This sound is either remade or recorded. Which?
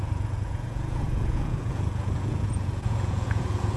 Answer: remade